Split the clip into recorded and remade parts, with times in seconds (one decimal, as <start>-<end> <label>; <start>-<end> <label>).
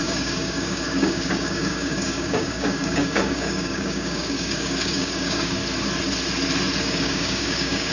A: 0.0-5.6 remade; 5.6-6.8 recorded; 6.8-7.9 remade